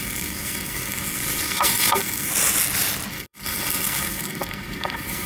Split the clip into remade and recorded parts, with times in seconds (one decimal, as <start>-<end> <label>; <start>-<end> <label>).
0.0-2.3 remade; 2.3-3.1 recorded; 3.1-5.3 remade

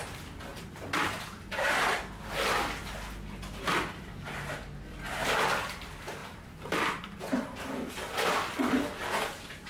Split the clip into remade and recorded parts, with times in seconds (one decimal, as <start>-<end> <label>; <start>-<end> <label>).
0.0-0.5 recorded; 0.5-1.2 remade; 1.2-6.2 recorded; 6.2-7.2 remade; 7.2-9.7 recorded

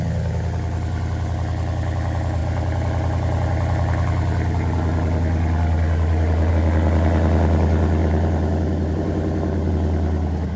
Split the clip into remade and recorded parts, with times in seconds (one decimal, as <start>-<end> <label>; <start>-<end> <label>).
0.0-8.0 recorded; 8.0-9.7 remade; 9.7-10.6 recorded

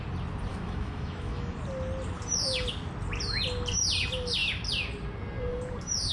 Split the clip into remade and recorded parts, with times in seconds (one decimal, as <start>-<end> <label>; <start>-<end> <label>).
0.0-0.5 recorded; 0.5-1.6 remade; 1.6-6.1 recorded

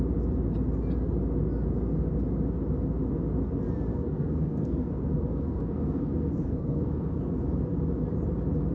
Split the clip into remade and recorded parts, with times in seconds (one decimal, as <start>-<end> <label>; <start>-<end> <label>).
0.0-3.9 recorded; 3.9-7.2 remade; 7.2-8.7 recorded

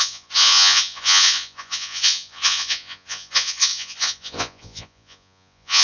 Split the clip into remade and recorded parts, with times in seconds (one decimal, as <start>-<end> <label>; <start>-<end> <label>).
0.0-5.8 remade